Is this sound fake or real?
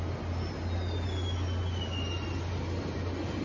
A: real